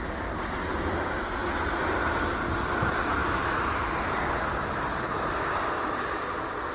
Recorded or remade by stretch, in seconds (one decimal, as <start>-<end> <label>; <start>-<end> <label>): 0.0-6.7 recorded